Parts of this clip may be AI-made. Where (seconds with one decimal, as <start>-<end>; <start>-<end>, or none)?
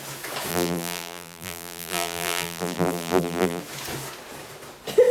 0.5-3.6